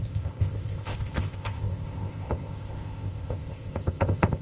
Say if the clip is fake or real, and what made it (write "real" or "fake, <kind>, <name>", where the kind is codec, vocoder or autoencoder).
fake, codec, ZipCodec